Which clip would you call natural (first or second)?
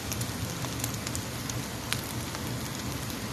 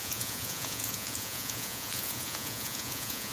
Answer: first